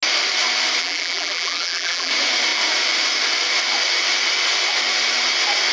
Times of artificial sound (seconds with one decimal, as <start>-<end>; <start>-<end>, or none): 0.8-2.1